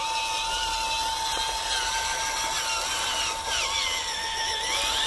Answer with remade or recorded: recorded